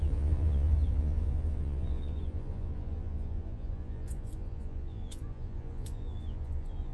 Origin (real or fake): fake